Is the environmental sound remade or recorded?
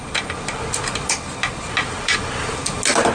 recorded